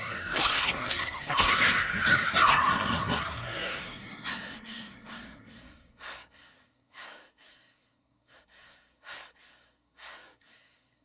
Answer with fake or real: fake